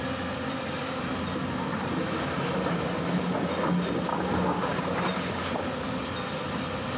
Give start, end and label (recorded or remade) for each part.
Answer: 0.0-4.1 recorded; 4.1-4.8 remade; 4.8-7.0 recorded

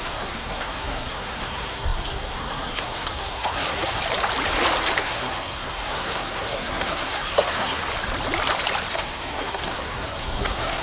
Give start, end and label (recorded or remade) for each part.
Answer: 0.0-4.0 remade; 4.0-5.0 recorded; 5.0-7.8 remade; 7.8-8.9 recorded; 8.9-10.8 remade